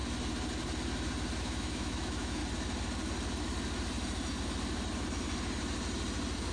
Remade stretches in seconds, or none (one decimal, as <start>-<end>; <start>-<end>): 1.4-2.4